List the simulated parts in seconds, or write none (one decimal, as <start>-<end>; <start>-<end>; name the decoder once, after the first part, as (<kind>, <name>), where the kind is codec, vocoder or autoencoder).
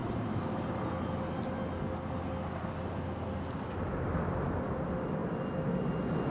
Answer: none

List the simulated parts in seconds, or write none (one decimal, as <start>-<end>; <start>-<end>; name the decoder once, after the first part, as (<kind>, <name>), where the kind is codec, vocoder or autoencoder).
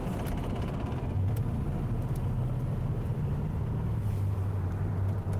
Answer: 0.0-1.3 (vocoder, BigVGAN v2); 3.1-5.4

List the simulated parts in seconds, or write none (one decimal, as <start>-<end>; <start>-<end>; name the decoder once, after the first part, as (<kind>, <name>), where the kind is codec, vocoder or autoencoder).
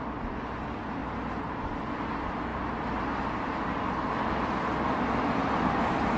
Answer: 2.5-3.0 (vocoder, BigVGAN v2); 3.5-4.3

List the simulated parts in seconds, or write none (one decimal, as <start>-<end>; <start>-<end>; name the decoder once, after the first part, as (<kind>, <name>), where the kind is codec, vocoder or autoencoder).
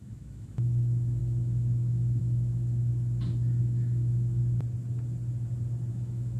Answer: 0.0-2.9 (autoencoder, DAC-VAE); 3.6-4.4; 5.9-6.4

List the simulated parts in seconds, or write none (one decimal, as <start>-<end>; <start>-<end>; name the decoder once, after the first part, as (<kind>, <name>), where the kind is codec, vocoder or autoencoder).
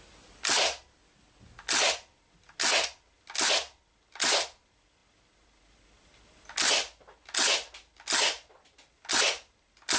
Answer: none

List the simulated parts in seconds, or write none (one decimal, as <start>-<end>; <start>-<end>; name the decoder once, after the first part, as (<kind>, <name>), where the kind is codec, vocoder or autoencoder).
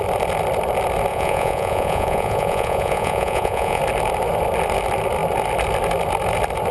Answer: 1.1-3.8 (vocoder, Vocos)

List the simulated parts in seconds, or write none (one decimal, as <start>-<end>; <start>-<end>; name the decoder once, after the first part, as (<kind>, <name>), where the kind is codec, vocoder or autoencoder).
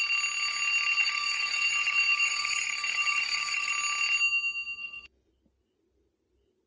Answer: 1.0-3.7 (codec, DAC); 4.8-5.3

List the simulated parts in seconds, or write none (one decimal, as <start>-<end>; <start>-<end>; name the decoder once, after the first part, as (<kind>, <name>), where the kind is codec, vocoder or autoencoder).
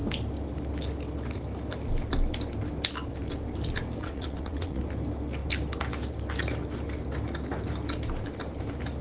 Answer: 4.0-4.8 (vocoder, WaveNeXt)